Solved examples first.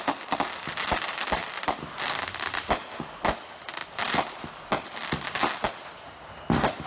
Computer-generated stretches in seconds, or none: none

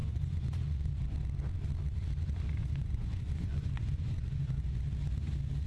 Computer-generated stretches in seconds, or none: 0.0-0.9; 2.6-4.7